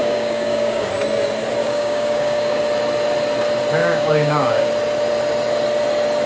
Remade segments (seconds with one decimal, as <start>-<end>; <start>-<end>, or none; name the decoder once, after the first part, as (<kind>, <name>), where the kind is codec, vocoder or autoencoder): 0.0-0.9 (codec, DAC); 1.6-2.6; 3.8-4.7

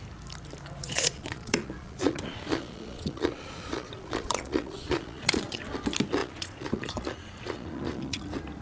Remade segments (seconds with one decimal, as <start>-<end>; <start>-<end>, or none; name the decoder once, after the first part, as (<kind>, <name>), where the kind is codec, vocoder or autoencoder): 0.8-5.6 (vocoder, Vocos); 6.2-8.2

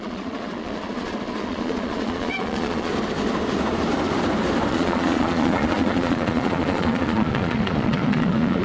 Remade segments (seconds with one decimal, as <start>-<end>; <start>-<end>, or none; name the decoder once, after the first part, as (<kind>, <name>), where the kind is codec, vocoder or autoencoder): 0.0-2.9 (vocoder, Vocos); 4.7-8.6

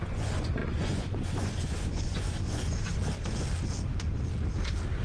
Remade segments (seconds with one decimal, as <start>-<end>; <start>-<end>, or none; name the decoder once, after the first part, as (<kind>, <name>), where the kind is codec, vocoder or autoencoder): 0.0-3.0 (vocoder, Vocos)

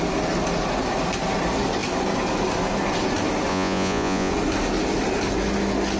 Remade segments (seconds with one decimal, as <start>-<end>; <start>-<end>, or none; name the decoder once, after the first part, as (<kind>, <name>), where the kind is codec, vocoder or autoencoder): 3.5-4.3 (vocoder, Vocos)

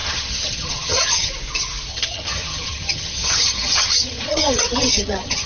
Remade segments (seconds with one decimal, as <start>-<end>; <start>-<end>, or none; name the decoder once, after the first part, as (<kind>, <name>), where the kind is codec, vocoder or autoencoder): 0.0-1.3 (vocoder, HiFi-GAN); 1.9-5.5

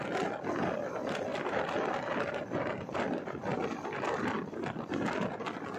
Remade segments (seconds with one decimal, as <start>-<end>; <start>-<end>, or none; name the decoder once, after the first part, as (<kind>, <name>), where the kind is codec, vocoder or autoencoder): 1.3-1.9 (vocoder, BigVGAN v2); 3.5-4.4

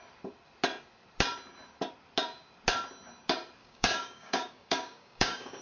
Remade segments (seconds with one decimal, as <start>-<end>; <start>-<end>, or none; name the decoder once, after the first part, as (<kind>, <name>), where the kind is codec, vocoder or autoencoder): 3.6-5.6 (codec, DAC)